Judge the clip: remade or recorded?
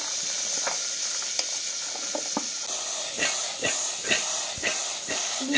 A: recorded